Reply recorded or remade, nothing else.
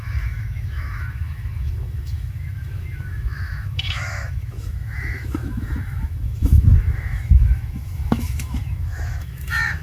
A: remade